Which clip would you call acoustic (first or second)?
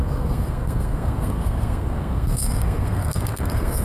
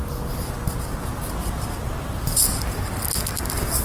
second